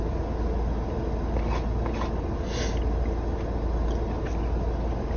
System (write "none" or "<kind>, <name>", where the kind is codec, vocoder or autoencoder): none